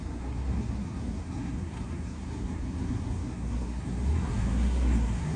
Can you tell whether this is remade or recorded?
remade